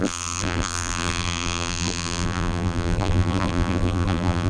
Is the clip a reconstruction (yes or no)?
yes